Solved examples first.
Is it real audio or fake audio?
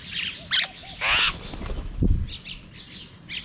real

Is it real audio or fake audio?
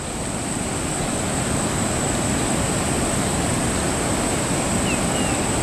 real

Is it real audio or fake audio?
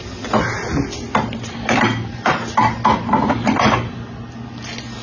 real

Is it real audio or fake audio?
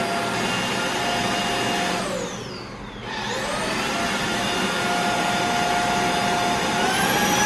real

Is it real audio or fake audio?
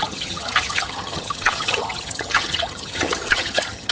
fake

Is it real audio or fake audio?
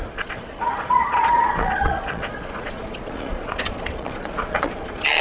fake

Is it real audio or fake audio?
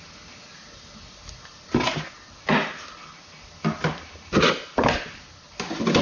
real